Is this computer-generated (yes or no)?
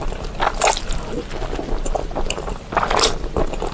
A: no